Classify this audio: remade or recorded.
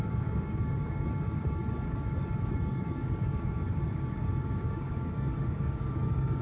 remade